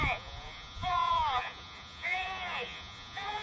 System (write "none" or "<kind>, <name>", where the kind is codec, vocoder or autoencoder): vocoder, Vocos